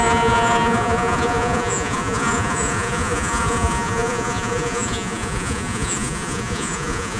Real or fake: fake